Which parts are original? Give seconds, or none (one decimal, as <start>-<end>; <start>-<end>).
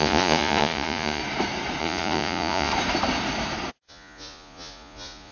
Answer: 1.2-1.8; 2.7-3.7